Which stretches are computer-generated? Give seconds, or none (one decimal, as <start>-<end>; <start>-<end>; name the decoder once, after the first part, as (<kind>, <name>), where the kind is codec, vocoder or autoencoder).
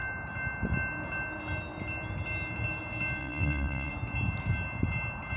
3.2-3.9 (vocoder, WaveNeXt)